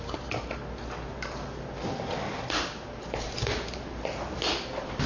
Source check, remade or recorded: recorded